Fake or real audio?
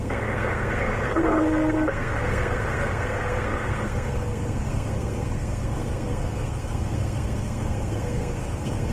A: fake